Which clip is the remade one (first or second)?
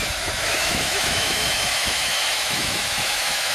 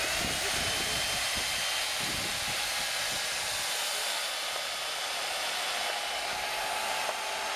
first